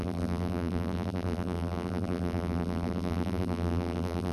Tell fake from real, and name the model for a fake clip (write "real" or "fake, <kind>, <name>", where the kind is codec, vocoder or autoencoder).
fake, vocoder, BigVGAN v2